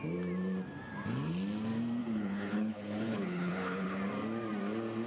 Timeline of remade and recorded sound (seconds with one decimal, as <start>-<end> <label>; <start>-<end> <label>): 0.0-2.0 recorded; 2.0-4.0 remade; 4.0-5.1 recorded